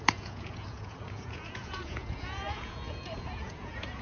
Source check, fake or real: fake